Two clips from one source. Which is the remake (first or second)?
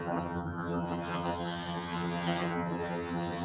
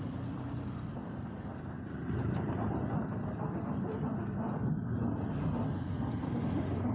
first